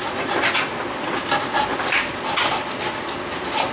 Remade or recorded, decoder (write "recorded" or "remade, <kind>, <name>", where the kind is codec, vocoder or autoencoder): recorded